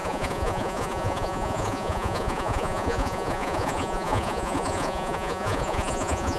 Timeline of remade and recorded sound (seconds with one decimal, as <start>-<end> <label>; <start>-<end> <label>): 0.0-6.4 remade